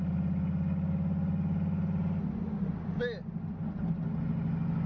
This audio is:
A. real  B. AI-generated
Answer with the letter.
A